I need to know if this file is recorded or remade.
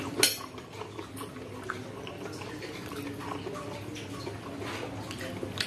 recorded